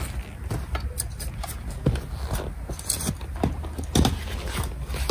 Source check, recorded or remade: recorded